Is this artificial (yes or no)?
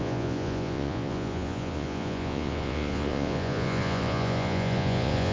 yes